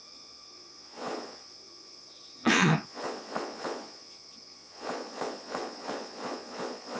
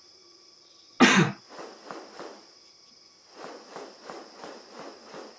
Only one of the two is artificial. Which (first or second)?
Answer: first